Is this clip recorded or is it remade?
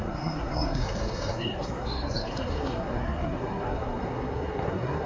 remade